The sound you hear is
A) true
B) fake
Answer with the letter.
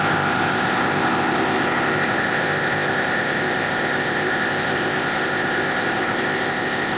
B